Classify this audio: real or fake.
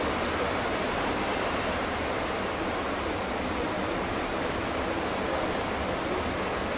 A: real